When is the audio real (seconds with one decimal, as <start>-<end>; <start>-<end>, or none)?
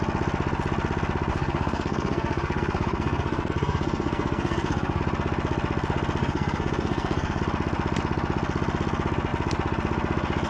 0.0-1.3; 5.0-6.2; 7.4-10.5